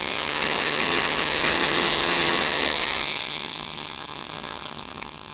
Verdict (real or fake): fake